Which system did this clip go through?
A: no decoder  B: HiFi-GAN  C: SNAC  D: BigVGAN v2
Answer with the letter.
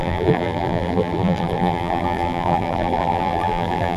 D